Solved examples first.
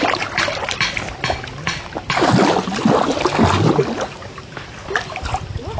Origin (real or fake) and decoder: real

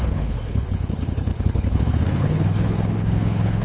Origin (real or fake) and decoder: fake, codec, HILCodec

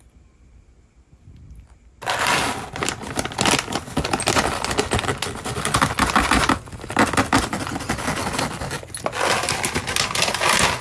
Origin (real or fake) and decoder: real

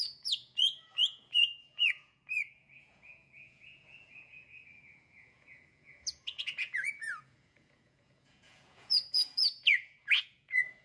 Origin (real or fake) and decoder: fake, vocoder, Vocos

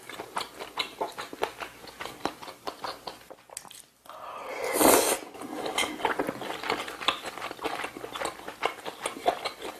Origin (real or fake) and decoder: real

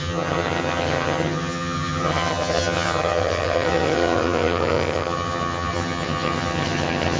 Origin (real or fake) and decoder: fake, vocoder, HiFi-GAN